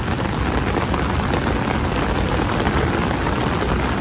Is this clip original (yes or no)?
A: yes